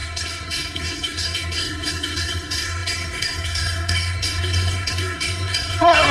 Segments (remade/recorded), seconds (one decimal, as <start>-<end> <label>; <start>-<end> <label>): 0.0-6.1 remade